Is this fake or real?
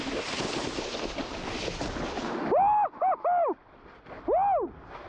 real